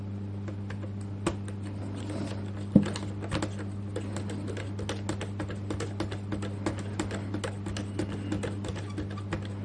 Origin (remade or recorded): recorded